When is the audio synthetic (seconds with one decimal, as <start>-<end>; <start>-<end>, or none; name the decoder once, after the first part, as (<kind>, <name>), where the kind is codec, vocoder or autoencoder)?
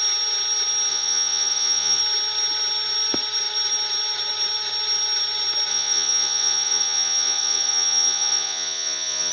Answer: 0.9-2.0 (vocoder, Vocos); 5.7-9.3